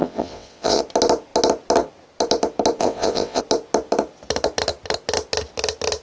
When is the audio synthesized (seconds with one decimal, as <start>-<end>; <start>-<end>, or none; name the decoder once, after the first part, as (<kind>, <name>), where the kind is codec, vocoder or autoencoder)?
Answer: 0.0-0.8 (vocoder, WaveNeXt); 2.8-3.4